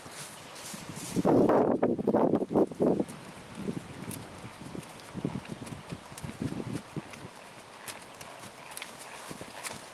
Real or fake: real